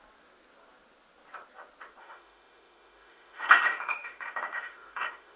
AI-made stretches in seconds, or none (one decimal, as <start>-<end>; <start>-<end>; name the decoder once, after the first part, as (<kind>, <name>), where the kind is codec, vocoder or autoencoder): 2.0-5.4 (autoencoder, DAC-VAE)